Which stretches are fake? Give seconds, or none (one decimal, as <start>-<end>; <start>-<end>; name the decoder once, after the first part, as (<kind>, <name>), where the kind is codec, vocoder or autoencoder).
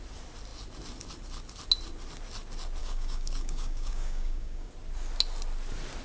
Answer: 2.8-4.7 (codec, DAC)